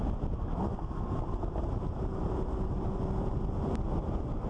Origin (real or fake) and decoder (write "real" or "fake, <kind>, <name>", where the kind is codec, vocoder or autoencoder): real